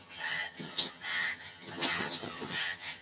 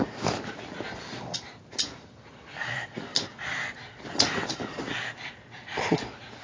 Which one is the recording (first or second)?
second